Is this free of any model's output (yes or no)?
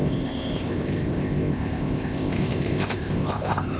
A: no